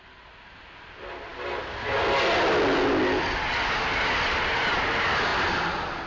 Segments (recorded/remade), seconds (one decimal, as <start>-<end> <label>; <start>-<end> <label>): 0.0-6.1 recorded